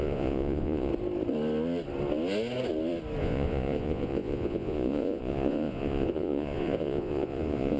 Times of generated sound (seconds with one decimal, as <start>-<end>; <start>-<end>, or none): 0.0-0.9; 3.2-7.8